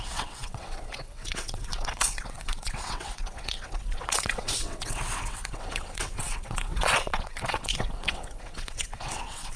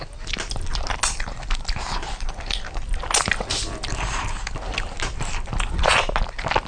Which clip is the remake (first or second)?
first